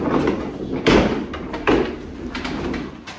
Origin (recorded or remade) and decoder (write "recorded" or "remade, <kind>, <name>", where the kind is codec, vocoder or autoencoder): recorded